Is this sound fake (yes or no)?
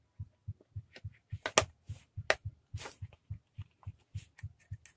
no